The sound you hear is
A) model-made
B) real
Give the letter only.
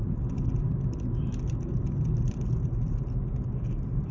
B